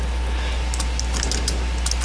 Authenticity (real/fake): real